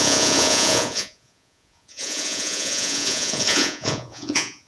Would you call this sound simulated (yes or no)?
yes